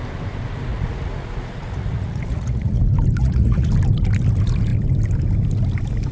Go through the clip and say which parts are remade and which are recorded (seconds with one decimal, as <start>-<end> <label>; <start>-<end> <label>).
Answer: 0.0-0.7 recorded; 0.7-2.8 remade; 2.8-3.2 recorded; 3.2-3.7 remade; 3.7-6.1 recorded